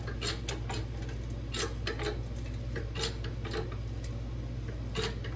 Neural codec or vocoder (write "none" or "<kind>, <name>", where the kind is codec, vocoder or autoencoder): none